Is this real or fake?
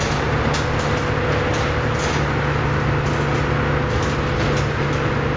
real